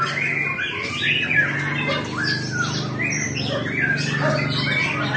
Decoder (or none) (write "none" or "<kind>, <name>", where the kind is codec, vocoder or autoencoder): none